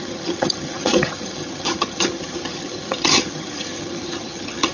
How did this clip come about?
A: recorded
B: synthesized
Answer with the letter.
B